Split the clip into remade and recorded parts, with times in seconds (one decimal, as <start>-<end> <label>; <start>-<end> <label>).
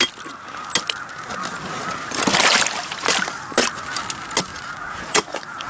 0.0-4.5 recorded; 4.5-5.7 remade